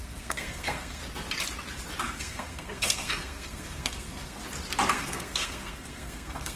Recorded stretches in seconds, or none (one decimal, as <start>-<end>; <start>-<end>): 1.0-2.0; 4.4-4.9

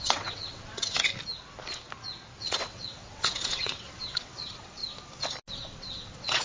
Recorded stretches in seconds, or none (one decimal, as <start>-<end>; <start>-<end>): 1.1-2.4; 4.8-5.5